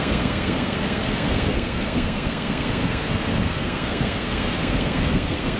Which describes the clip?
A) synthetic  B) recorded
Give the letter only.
A